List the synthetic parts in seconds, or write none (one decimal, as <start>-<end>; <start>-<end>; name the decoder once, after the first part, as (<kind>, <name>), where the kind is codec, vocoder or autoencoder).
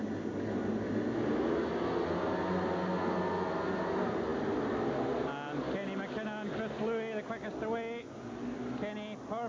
none